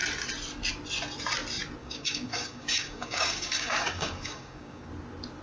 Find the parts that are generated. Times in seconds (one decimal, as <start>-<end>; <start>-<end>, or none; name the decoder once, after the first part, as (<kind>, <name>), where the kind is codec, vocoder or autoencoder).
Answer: 1.8-4.9 (codec, DAC)

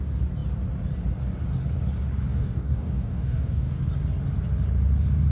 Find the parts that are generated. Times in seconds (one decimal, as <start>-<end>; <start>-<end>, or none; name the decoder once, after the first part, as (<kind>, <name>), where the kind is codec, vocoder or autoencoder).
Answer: 2.3-3.8 (codec, DAC)